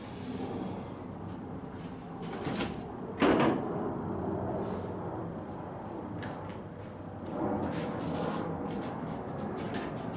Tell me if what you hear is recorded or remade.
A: recorded